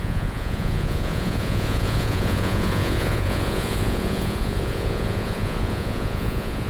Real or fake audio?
fake